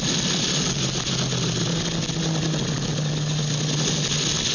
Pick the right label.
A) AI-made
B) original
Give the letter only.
B